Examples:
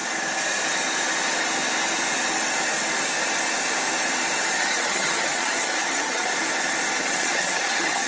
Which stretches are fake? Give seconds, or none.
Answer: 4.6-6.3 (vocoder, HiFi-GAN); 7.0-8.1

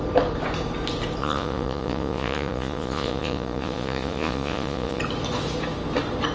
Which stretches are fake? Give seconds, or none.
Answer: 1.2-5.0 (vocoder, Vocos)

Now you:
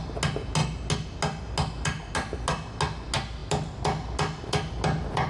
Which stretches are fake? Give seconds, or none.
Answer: none

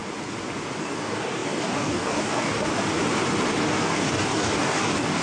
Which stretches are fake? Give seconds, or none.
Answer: 0.8-2.7 (codec, DAC); 3.6-5.2

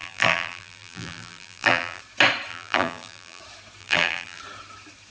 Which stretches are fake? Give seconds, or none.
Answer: 0.0-2.0 (vocoder, BigVGAN v2); 2.5-3.4; 3.8-4.4

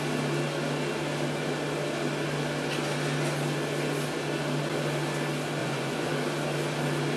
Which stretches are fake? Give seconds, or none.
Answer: 5.6-6.1 (vocoder, Vocos)

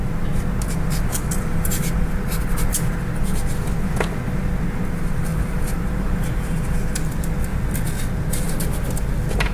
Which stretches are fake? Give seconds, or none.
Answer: 5.3-6.8 (vocoder, BigVGAN v2)

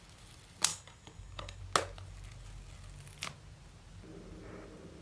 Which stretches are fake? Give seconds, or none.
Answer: 0.7-1.6 (codec, DAC)